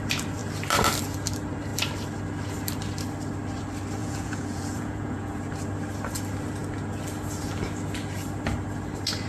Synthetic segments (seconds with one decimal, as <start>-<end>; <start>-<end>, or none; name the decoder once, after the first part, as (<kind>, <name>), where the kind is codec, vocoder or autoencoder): 4.0-5.4 (vocoder, Vocos)